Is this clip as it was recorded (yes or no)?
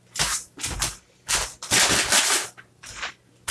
yes